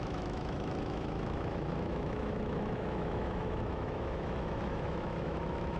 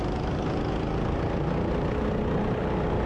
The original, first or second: second